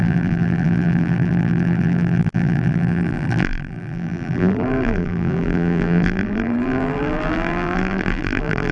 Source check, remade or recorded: remade